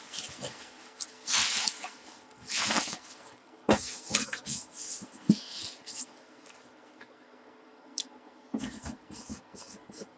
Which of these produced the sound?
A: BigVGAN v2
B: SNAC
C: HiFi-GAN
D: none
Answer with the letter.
B